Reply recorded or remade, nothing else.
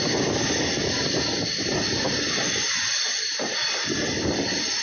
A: recorded